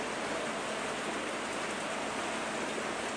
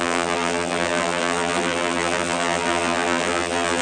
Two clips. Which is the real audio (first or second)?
first